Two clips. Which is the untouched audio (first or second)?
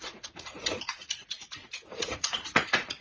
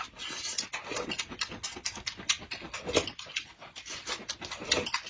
second